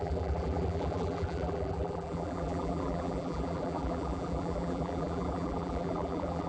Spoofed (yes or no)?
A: yes